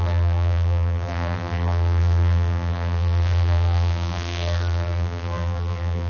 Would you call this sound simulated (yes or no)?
yes